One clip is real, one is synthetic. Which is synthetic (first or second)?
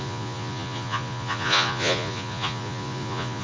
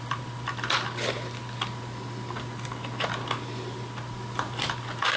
first